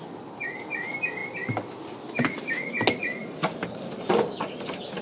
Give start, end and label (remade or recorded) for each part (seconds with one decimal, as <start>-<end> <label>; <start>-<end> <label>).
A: 0.0-5.0 recorded